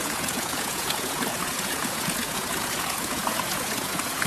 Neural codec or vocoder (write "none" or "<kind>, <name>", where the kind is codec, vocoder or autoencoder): vocoder, Vocos